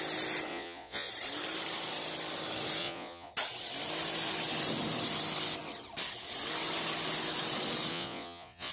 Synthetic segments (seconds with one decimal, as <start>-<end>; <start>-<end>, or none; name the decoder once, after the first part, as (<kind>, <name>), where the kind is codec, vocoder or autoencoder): 0.5-1.1 (vocoder, Vocos); 2.8-3.3; 7.9-8.7